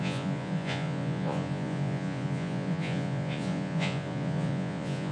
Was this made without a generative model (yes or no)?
no